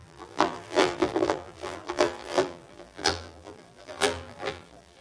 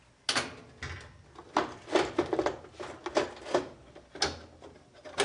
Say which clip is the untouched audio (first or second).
second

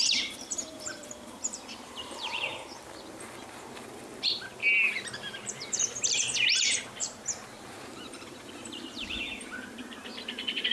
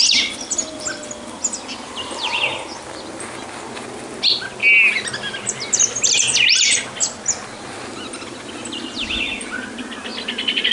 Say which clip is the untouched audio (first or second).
second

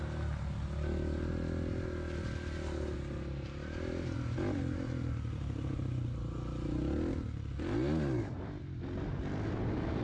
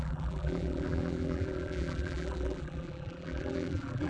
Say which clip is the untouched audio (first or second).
first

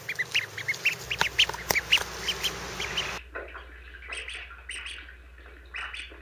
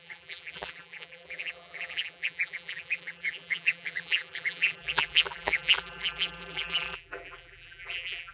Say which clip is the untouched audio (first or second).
first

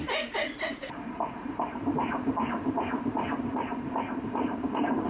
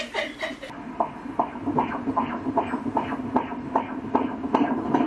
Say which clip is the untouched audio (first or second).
second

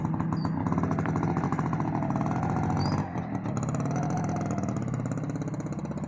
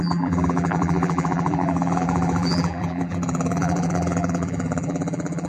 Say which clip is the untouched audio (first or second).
first